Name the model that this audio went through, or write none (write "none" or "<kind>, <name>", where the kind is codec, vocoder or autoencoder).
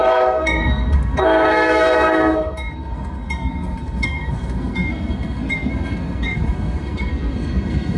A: codec, SNAC